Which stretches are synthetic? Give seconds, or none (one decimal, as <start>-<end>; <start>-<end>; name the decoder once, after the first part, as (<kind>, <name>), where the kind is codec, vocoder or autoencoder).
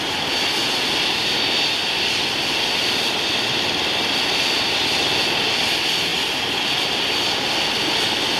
none